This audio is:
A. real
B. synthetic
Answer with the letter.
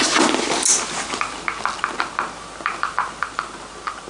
A